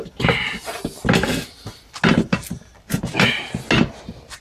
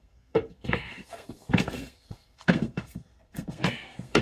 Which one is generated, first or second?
second